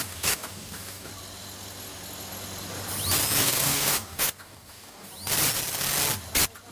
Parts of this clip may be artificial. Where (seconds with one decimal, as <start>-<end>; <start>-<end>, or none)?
0.0-1.1; 3.4-5.1